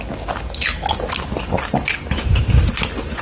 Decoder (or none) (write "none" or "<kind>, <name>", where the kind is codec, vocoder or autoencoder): none